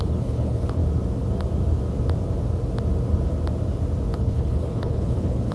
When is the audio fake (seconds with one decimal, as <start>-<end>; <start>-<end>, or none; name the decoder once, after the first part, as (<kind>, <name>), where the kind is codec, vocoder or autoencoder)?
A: 0.0-0.8 (codec, HILCodec); 4.1-5.5